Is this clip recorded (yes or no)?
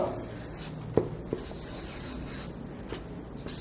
yes